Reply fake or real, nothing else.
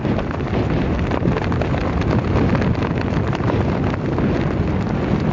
real